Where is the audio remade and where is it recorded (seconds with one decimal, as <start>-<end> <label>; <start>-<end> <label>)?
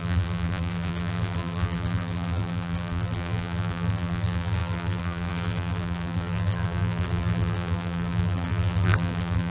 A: 0.0-9.5 remade